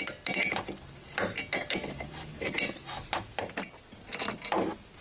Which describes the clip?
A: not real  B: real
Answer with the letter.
B